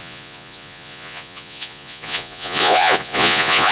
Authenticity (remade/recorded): remade